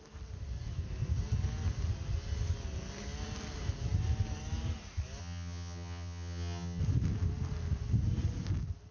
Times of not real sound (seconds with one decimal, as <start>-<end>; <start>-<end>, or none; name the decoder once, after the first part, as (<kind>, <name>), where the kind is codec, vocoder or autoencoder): 5.2-6.8 (vocoder, HiFi-GAN)